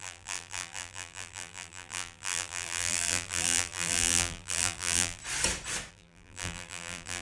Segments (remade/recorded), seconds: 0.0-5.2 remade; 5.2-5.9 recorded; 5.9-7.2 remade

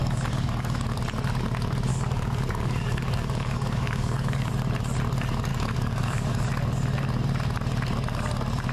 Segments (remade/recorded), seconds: 0.0-1.0 remade; 1.0-1.9 recorded; 1.9-4.5 remade; 4.5-5.5 recorded; 5.5-6.5 remade; 6.5-8.7 recorded

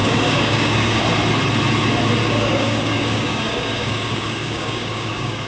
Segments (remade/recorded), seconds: 0.0-1.0 remade; 1.0-2.2 recorded; 2.2-5.5 remade

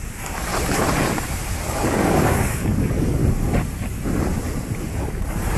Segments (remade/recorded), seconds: 0.0-0.5 remade; 0.5-1.6 recorded; 1.6-3.2 remade; 3.2-5.0 recorded; 5.0-5.6 remade